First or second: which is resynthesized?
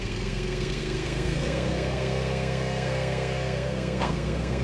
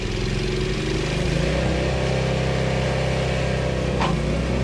first